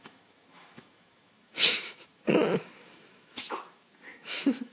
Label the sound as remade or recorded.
remade